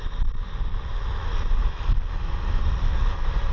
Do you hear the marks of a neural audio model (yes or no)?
no